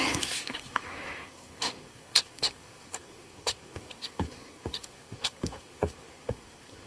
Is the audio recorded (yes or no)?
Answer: no